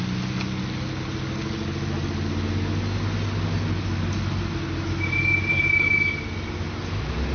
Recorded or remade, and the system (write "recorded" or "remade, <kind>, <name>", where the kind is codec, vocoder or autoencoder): recorded